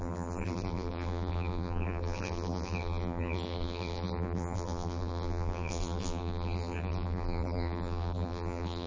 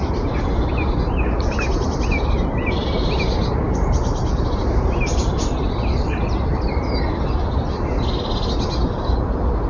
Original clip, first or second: second